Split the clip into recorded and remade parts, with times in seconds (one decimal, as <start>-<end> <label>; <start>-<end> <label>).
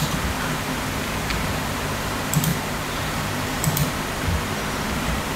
0.0-3.8 remade; 3.8-4.9 recorded; 4.9-5.4 remade